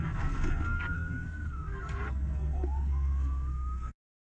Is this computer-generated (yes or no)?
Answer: yes